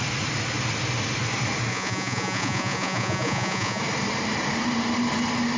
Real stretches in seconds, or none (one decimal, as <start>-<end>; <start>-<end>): 0.0-1.7; 3.8-5.6